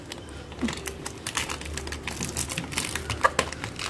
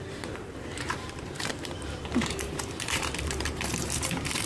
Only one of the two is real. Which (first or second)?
first